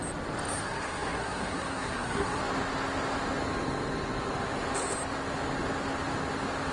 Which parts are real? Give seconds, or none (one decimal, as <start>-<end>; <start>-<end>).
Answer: 0.0-0.6; 2.4-6.7